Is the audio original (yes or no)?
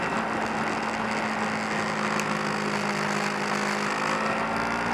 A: yes